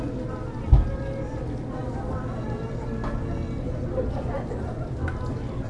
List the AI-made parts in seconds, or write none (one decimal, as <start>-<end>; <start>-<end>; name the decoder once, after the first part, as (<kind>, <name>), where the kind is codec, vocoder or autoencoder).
none